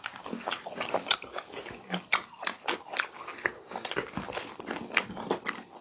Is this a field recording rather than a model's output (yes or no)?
yes